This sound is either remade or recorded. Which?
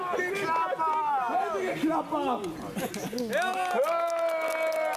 recorded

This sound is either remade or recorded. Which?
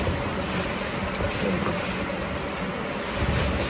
recorded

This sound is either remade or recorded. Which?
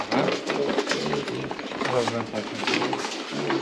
recorded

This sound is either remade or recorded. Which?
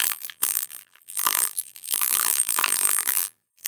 remade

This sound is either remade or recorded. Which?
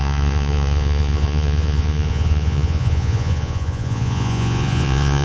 remade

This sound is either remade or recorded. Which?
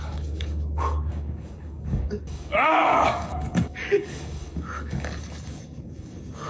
remade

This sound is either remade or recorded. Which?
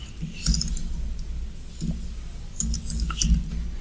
recorded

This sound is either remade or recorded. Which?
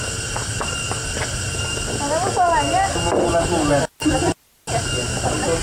recorded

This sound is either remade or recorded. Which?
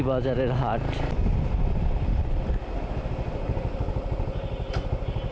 recorded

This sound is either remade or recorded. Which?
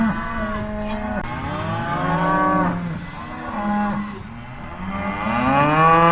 recorded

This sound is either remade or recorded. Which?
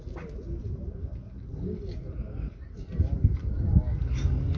recorded